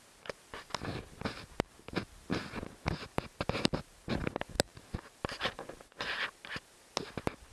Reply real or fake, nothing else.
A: real